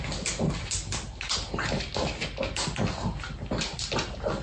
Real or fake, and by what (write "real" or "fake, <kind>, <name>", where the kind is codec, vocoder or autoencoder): real